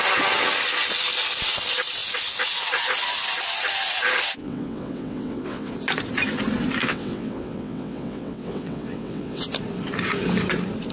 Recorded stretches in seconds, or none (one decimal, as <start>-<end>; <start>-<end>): 0.0-4.4; 5.7-6.8; 9.4-10.9